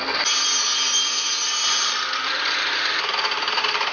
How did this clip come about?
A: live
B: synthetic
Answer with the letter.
A